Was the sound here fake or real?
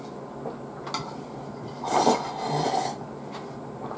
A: real